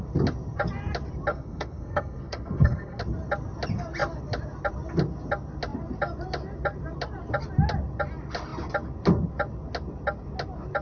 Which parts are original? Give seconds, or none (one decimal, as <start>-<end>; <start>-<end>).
0.0-1.3; 3.0-10.8